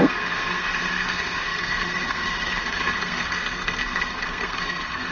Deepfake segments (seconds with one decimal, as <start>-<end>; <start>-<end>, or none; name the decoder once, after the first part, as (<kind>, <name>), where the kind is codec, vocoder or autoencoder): 0.0-5.1 (codec, SNAC)